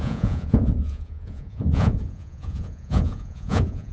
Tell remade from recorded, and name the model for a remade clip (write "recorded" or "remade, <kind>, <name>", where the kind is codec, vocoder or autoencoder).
remade, vocoder, Vocos